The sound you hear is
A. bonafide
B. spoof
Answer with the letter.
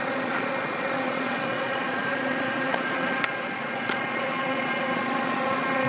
B